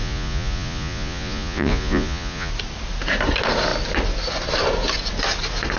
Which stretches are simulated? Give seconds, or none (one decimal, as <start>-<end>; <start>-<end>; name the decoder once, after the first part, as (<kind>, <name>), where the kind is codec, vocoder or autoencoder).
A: 0.0-2.5 (vocoder, Vocos)